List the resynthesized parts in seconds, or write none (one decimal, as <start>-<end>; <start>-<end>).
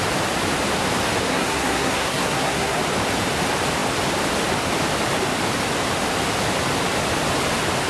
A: 1.3-2.8